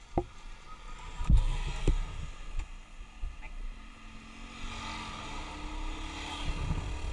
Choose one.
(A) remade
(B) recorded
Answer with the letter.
B